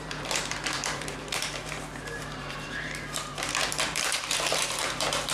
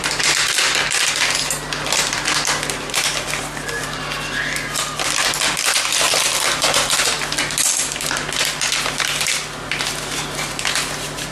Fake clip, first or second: first